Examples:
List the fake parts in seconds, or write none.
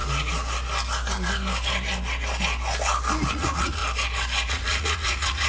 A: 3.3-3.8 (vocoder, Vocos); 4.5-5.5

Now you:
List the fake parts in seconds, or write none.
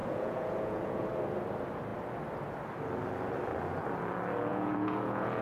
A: 0.0-1.1 (vocoder, Vocos); 4.5-5.4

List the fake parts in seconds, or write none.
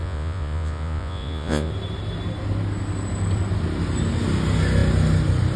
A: 0.0-1.7 (vocoder, Vocos)